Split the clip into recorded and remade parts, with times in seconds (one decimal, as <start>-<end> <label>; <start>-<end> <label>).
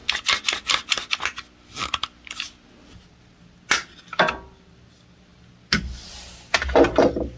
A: 0.0-7.4 recorded